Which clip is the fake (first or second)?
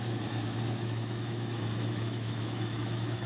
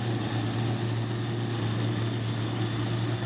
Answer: first